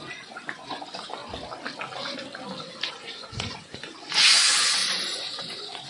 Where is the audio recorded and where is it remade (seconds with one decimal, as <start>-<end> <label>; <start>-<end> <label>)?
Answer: 0.0-1.2 remade; 1.2-2.9 recorded; 2.9-5.9 remade